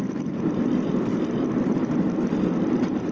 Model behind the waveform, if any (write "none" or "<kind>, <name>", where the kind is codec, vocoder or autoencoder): none